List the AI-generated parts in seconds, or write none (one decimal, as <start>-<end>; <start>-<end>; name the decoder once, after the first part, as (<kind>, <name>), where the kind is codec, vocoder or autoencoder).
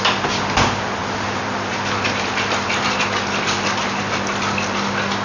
none